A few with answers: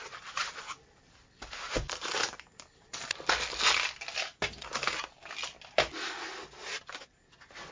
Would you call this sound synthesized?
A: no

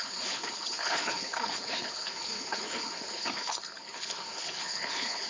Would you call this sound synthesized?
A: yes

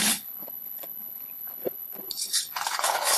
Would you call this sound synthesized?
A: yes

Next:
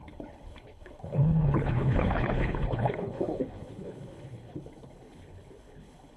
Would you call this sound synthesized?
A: yes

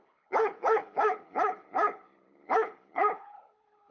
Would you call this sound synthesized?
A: yes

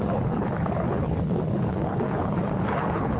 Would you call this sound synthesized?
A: yes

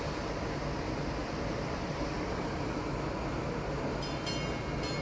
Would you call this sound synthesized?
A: no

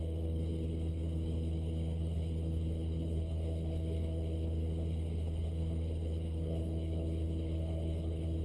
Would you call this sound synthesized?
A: yes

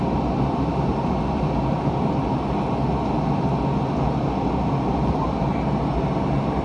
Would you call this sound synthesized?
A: no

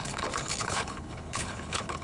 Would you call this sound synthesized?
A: yes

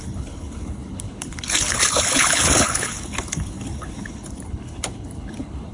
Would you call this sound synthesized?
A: yes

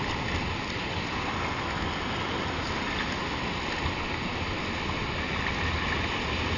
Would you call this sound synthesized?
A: no